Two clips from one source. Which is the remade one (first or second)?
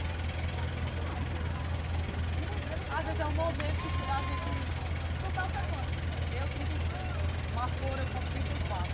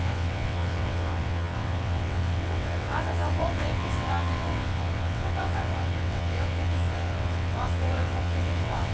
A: second